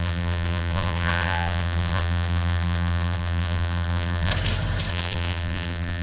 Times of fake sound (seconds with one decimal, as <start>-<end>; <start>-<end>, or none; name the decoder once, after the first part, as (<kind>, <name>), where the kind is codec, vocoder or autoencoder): 0.0-4.3 (vocoder, BigVGAN v2); 4.9-6.0